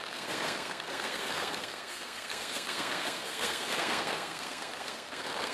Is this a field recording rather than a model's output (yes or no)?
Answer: no